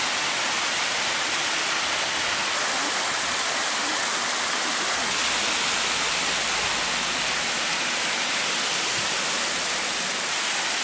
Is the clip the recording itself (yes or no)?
no